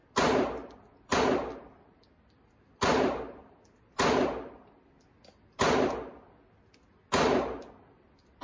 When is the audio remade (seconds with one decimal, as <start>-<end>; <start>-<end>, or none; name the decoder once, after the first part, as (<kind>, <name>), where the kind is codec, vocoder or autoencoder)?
none